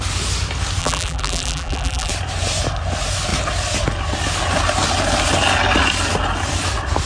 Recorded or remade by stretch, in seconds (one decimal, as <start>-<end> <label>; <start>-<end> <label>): 0.0-0.8 recorded; 0.8-2.1 remade; 2.1-7.1 recorded